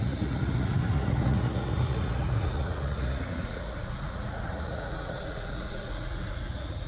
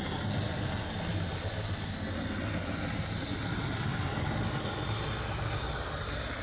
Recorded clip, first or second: second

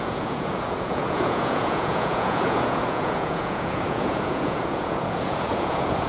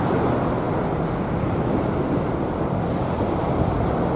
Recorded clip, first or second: second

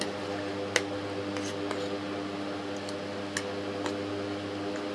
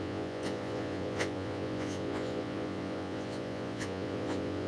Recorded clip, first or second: first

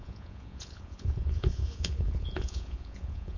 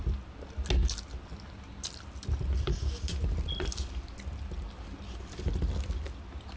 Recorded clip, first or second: second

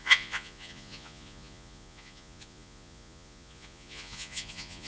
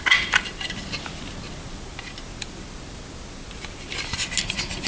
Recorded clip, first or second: second